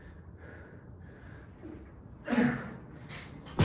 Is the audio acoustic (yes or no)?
yes